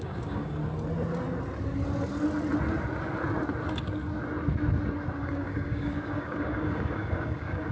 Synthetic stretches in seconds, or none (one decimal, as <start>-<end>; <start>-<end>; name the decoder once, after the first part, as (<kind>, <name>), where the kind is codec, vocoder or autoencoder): 0.0-0.6 (codec, DAC); 5.2-7.7